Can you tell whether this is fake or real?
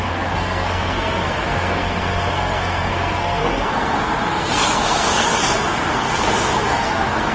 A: fake